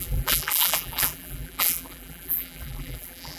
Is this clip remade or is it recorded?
remade